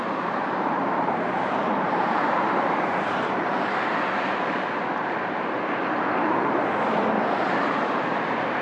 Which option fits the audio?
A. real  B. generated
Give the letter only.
B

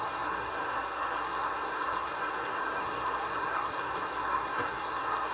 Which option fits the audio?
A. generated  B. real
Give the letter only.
A